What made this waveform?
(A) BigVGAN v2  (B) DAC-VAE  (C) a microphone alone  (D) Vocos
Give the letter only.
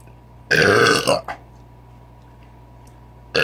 C